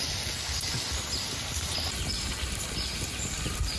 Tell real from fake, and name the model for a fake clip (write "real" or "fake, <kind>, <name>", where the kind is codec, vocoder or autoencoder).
real